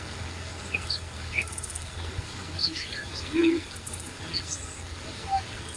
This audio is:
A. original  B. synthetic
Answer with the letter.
B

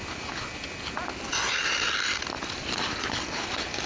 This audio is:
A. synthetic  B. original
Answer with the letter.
B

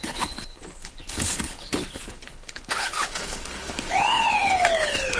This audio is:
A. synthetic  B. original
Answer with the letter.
A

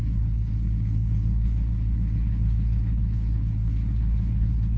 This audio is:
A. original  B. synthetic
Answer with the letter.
B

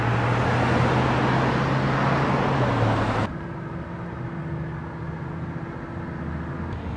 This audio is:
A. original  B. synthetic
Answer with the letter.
A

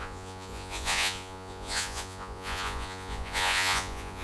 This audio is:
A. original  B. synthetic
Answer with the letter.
B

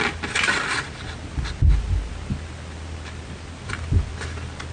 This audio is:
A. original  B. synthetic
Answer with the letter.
A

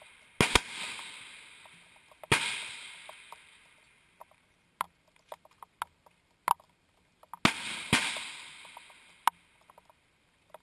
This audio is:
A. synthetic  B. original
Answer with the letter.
B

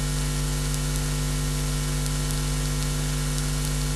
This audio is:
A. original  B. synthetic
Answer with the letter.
A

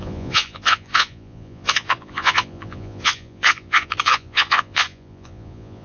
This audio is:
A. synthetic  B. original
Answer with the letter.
A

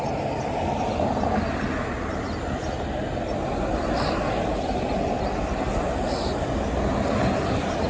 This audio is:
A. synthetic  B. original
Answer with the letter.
B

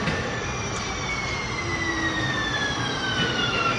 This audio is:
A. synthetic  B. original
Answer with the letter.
B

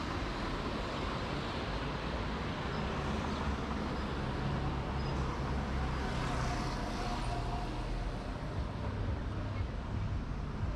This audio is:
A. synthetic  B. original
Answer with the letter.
B